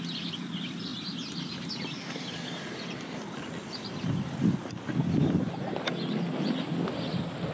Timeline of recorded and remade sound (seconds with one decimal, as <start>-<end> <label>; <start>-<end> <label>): 0.0-7.5 recorded